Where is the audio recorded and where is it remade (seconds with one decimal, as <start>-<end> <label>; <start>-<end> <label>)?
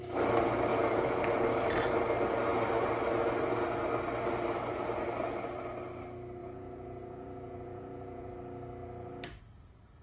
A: 0.0-0.7 recorded; 0.7-1.2 remade; 1.2-6.4 recorded; 6.4-8.3 remade; 8.3-10.0 recorded